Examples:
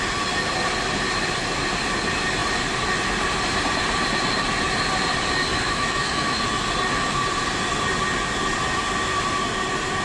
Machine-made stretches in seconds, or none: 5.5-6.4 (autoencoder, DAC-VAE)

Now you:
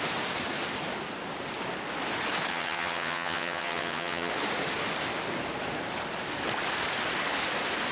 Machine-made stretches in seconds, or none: 2.5-4.3 (vocoder, HiFi-GAN)